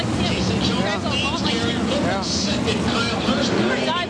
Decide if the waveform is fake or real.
real